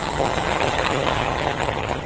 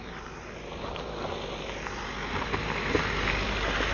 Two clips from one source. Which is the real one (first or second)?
second